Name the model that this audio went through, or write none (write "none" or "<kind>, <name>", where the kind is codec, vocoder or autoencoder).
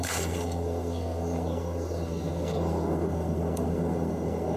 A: codec, SNAC